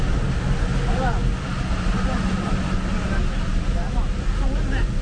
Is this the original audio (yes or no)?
yes